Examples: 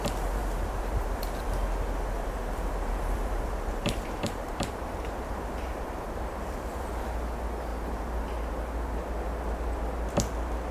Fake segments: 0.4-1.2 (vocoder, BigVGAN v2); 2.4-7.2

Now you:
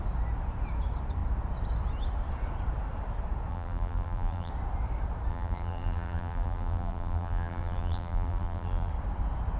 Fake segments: 3.5-4.5 (vocoder, BigVGAN v2); 5.3-8.9